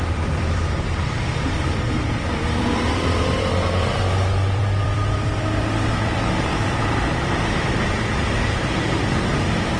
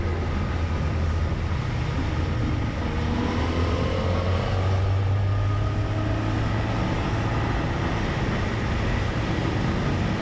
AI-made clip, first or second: first